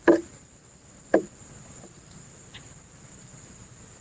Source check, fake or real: fake